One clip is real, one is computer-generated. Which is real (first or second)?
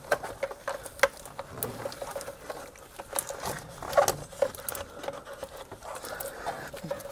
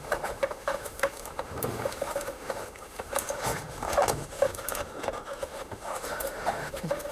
first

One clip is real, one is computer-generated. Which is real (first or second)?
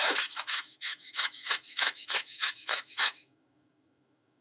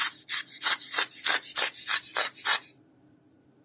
second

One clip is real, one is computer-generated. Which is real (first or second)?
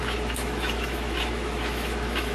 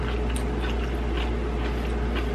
second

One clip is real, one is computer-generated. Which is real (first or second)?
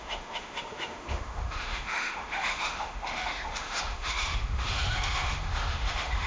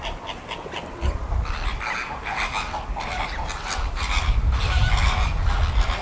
second